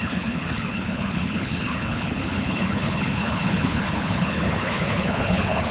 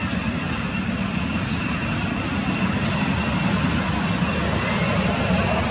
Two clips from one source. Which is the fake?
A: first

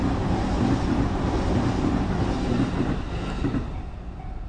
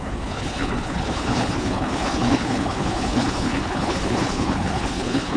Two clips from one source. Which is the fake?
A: second